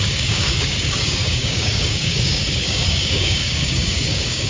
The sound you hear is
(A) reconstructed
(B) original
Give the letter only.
A